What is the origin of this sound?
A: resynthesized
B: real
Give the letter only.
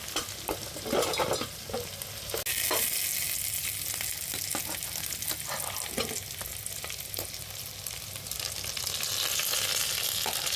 B